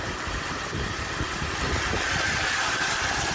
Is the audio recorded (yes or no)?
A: yes